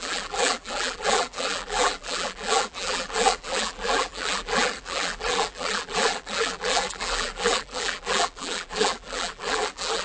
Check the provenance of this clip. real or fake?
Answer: fake